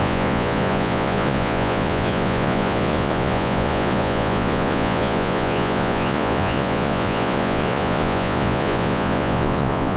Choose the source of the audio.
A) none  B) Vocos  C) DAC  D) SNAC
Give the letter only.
B